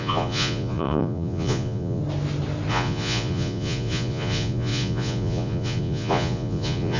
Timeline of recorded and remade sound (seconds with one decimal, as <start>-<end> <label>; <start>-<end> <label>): 0.0-2.0 remade; 2.0-2.7 recorded; 2.7-7.0 remade